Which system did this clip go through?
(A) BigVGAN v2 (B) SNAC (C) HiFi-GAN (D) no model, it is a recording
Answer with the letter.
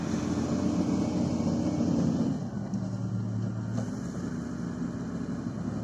D